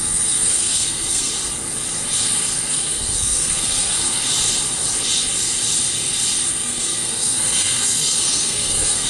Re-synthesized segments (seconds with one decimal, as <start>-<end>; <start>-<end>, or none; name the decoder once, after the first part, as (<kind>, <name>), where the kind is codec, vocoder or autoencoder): 0.0-1.3 (codec, SNAC); 2.7-4.2; 6.5-9.1

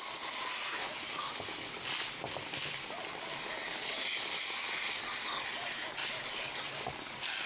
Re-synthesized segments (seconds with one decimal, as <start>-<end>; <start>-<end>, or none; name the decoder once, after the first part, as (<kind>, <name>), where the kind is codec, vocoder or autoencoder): 6.0-6.6 (vocoder, BigVGAN v2)

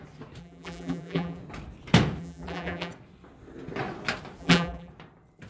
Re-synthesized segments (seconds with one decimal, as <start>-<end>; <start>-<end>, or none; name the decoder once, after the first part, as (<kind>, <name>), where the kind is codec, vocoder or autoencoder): 0.4-1.4 (vocoder, BigVGAN v2); 2.2-2.9; 4.4-4.9

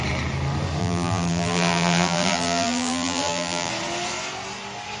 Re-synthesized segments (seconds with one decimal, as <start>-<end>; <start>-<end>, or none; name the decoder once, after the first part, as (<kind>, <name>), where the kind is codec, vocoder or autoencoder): 0.8-3.7 (vocoder, BigVGAN v2)

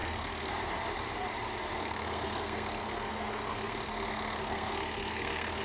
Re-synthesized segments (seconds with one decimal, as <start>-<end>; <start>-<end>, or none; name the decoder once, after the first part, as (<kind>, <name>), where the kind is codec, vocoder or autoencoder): 0.0-0.5 (codec, SNAC); 1.8-5.6

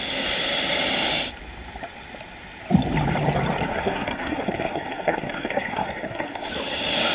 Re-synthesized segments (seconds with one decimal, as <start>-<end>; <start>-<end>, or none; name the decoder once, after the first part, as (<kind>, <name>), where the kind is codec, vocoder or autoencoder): 3.7-6.5 (codec, SNAC)